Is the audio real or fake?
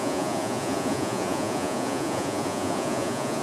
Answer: fake